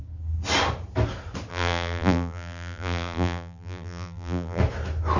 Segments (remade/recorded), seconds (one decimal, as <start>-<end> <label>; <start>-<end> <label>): 0.0-1.5 recorded; 1.5-4.6 remade; 4.6-5.2 recorded